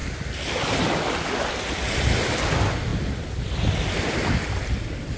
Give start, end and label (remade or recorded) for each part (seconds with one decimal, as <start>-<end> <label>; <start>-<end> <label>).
0.0-5.2 recorded